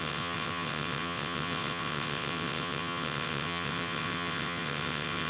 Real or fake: fake